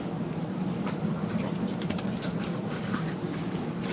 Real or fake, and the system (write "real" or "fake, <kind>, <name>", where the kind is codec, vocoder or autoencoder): real